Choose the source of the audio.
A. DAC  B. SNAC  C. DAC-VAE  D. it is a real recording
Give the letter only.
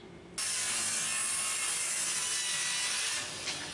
D